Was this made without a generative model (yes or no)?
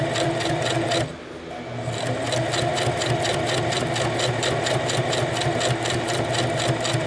yes